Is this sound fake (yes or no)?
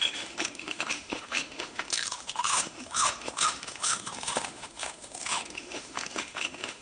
yes